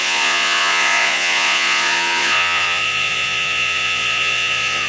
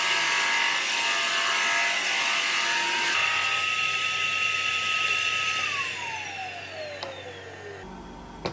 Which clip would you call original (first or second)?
second